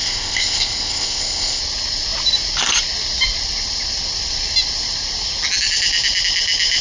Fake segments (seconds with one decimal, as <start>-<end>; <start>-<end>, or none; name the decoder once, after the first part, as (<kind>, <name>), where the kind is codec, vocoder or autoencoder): 0.0-1.6 (codec, ZipCodec)